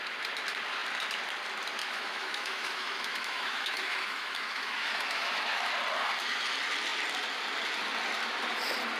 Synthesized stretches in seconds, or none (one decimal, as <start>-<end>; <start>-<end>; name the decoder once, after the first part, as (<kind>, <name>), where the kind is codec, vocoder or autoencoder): 1.8-5.6 (autoencoder, DAC-VAE)